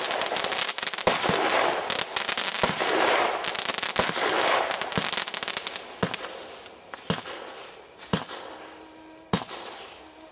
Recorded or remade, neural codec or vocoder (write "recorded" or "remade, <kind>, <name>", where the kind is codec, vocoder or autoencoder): recorded